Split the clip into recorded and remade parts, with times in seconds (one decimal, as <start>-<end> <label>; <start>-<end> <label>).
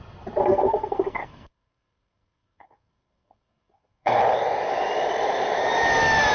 0.0-0.4 recorded; 0.4-4.2 remade; 4.2-6.3 recorded